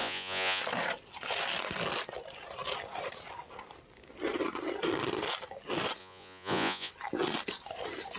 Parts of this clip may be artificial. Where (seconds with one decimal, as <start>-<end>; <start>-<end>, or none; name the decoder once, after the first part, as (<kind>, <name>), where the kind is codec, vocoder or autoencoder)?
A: 0.0-0.6 (vocoder, Vocos); 6.0-6.9